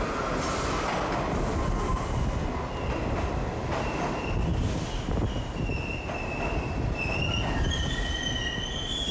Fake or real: real